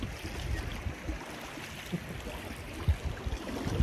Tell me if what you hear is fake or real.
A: real